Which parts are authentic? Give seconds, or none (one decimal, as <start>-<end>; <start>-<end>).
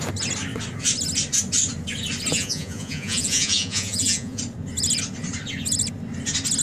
0.0-2.3; 4.4-6.6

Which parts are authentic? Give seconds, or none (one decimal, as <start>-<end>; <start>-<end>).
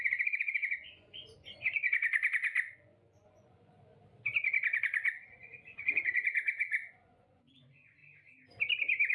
3.9-4.8; 8.0-9.1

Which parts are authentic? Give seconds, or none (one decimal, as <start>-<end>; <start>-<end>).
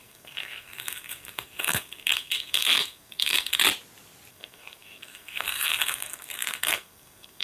3.6-4.3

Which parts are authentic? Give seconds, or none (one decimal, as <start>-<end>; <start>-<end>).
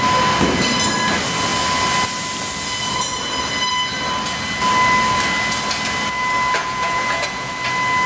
0.0-6.6; 7.5-8.1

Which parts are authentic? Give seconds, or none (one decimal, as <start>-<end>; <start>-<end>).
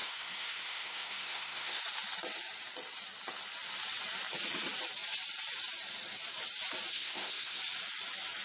1.8-6.9; 7.6-8.4